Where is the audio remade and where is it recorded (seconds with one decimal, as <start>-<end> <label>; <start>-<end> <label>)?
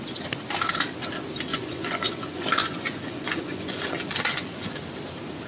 0.0-1.5 recorded; 1.5-4.8 remade; 4.8-5.5 recorded